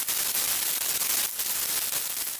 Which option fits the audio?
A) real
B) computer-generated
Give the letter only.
A